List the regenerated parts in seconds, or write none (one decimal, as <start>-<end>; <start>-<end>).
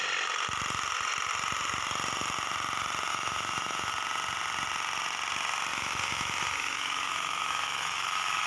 3.1-3.9; 5.7-8.5